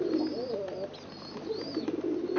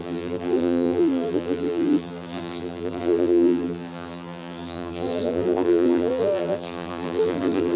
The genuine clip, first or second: first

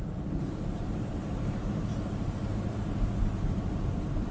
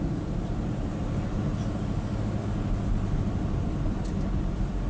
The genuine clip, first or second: second